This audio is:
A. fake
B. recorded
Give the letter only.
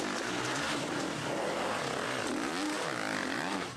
B